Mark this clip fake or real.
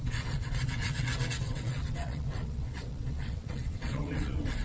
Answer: fake